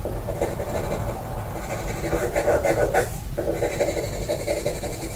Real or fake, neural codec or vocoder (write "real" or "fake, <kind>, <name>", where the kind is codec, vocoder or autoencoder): real